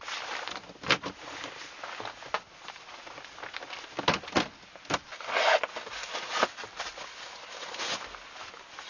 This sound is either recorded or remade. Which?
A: recorded